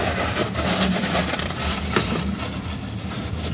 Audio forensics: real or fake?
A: fake